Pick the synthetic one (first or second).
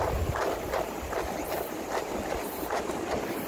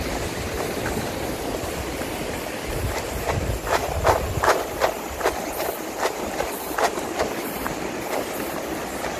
second